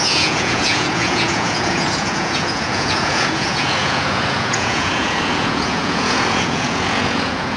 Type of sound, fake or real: fake